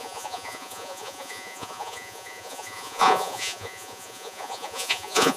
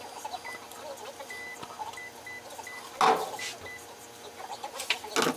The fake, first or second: first